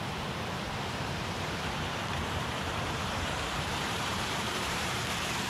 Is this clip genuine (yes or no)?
no